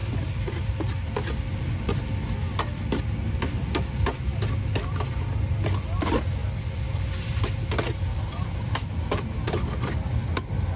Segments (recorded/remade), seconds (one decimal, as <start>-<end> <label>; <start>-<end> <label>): 0.0-10.8 recorded